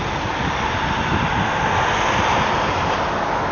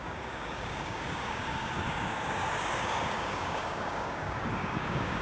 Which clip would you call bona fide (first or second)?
first